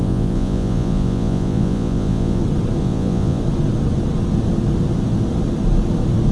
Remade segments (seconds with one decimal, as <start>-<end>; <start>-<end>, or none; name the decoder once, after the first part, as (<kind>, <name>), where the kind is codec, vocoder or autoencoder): 0.0-2.4 (vocoder, Vocos); 2.8-3.4